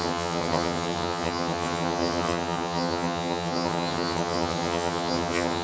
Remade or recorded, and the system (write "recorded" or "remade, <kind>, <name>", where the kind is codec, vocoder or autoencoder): remade, vocoder, HiFi-GAN